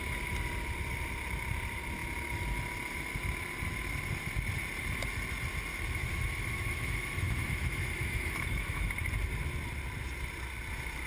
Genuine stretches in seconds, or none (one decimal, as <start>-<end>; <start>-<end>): 0.0-6.0; 8.9-11.1